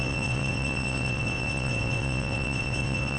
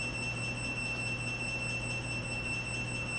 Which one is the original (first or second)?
second